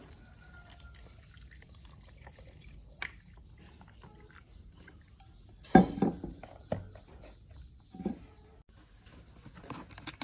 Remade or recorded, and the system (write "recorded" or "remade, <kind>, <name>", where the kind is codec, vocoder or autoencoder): recorded